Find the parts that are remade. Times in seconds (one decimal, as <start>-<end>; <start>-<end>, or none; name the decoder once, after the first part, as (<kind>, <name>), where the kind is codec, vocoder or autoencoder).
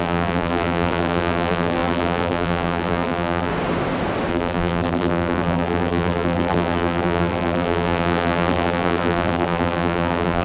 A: 0.0-3.5 (vocoder, BigVGAN v2); 4.3-10.4